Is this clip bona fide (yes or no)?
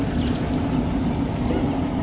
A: yes